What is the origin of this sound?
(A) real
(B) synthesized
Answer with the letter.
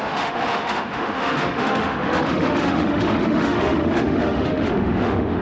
B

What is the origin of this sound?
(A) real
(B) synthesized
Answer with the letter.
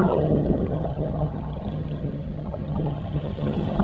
B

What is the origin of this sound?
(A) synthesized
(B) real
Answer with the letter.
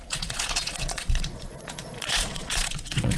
A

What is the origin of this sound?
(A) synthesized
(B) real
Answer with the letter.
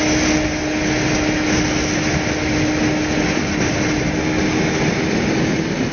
B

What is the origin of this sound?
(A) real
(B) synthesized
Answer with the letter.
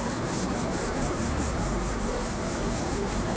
B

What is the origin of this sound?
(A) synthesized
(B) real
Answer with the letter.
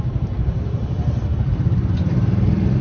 B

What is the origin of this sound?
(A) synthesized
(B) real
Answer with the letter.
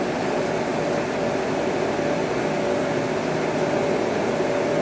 B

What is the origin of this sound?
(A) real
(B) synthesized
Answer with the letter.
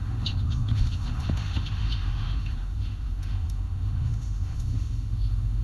B